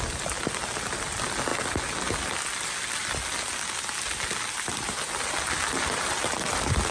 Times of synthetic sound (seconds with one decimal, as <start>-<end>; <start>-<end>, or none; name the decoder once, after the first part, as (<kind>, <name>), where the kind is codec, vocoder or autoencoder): none